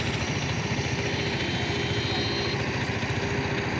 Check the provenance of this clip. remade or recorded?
recorded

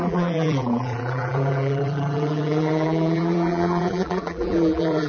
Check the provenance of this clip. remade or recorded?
remade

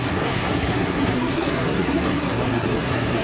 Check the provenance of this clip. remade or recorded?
remade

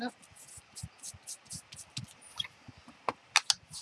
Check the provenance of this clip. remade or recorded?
recorded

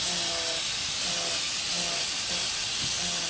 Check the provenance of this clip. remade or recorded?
recorded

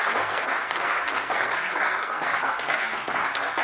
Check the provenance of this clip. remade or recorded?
remade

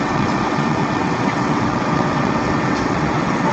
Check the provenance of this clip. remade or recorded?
remade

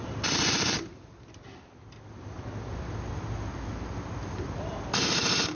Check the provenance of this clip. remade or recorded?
recorded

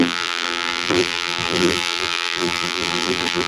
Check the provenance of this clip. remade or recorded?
remade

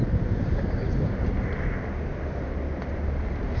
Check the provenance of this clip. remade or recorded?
recorded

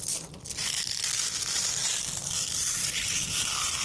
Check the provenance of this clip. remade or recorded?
recorded